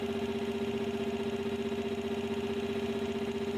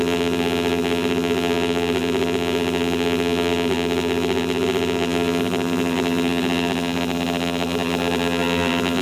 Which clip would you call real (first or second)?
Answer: first